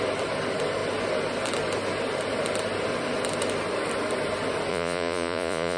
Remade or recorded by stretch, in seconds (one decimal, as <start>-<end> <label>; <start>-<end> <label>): 0.0-4.7 recorded; 4.7-5.8 remade